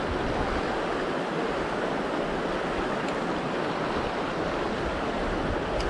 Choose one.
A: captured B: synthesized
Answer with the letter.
A